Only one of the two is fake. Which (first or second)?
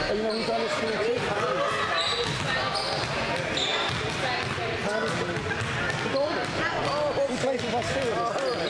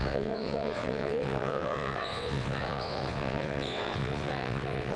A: second